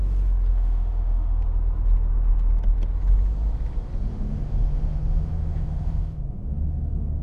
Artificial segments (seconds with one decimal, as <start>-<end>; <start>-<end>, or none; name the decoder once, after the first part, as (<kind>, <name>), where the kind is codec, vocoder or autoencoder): 0.5-1.4 (autoencoder, DAC-VAE); 4.1-7.2

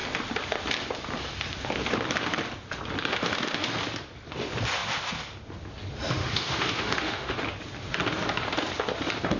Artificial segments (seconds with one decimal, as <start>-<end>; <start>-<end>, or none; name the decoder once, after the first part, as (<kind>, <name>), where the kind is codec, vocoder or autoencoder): 3.1-3.7 (autoencoder, DAC-VAE); 6.2-7.3

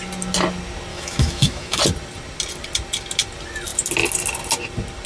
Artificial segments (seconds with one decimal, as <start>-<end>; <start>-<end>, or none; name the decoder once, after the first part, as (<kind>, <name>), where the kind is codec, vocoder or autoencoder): 0.9-1.8 (autoencoder, DAC-VAE)

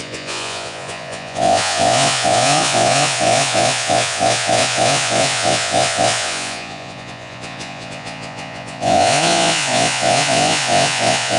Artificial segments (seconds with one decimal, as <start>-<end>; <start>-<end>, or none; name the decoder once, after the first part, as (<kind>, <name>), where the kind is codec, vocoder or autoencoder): 0.0-11.4 (vocoder, Vocos)